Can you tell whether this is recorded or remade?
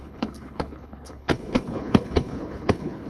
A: remade